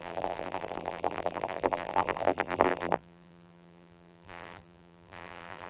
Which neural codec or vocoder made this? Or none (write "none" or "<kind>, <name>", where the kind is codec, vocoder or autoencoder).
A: vocoder, BigVGAN v2